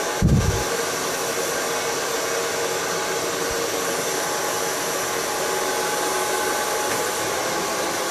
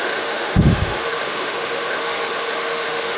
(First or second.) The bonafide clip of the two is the first